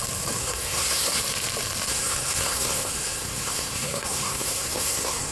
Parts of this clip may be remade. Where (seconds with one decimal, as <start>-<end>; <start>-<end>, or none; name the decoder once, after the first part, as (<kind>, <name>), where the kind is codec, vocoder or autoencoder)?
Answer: 0.4-1.2 (codec, SNAC); 1.9-5.3